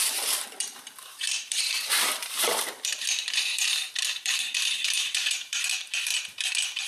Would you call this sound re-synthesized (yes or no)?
yes